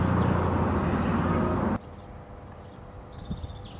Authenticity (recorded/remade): recorded